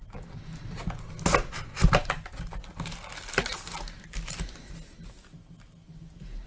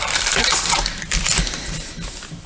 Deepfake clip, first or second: second